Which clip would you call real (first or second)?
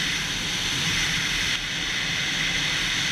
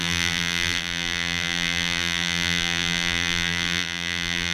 first